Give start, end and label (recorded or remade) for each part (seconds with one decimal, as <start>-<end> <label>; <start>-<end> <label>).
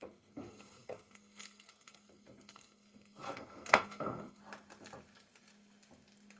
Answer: 0.0-4.4 remade; 4.4-6.4 recorded